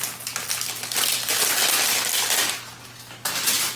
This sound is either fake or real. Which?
real